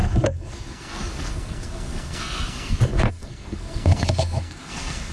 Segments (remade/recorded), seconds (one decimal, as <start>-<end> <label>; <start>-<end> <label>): 0.0-5.1 remade